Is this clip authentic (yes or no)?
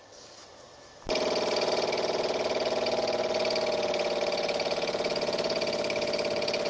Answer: yes